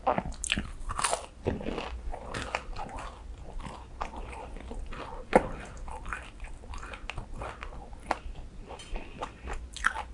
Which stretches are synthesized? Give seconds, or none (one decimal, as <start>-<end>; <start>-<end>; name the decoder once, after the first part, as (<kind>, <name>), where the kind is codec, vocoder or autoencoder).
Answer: none